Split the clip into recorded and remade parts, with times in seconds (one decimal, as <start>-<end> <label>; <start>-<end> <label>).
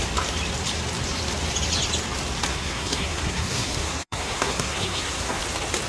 0.0-2.5 recorded; 2.5-5.4 remade; 5.4-5.9 recorded